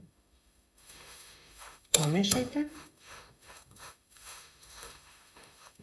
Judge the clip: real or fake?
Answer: fake